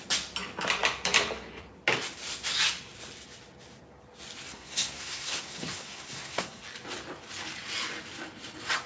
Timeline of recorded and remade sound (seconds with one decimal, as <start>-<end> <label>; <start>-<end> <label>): 0.0-4.5 recorded; 4.5-6.6 remade; 6.6-8.9 recorded